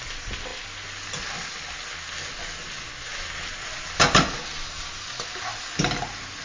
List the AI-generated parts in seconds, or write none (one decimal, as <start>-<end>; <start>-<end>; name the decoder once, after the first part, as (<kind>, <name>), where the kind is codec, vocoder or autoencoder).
none